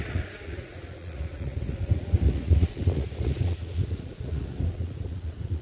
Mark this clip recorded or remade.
remade